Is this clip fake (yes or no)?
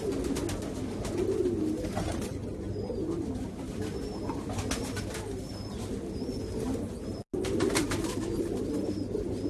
no